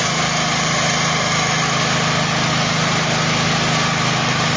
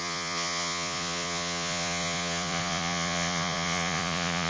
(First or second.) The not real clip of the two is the second